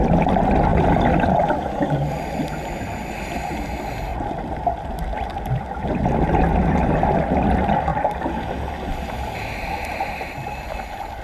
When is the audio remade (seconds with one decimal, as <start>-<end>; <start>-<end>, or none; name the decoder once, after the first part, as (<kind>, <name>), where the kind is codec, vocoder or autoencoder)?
0.7-3.0 (vocoder, BigVGAN v2); 4.1-6.7; 7.9-9.1